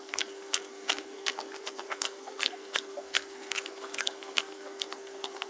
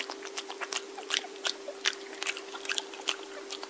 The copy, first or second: first